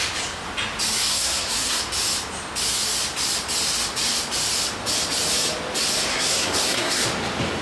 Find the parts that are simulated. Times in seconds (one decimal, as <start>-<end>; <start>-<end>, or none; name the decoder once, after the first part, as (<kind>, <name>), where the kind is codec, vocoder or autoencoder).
1.1-1.8 (codec, SNAC); 6.1-7.0